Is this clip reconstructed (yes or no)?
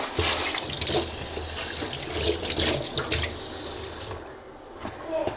no